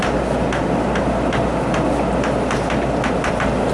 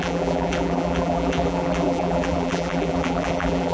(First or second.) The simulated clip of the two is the second